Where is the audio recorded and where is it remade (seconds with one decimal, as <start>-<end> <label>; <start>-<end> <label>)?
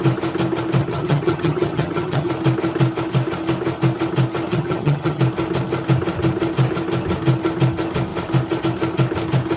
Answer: 0.0-0.8 recorded; 0.8-2.3 remade; 2.3-4.5 recorded; 4.5-5.2 remade; 5.2-9.6 recorded